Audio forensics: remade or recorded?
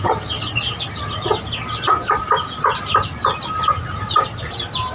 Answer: recorded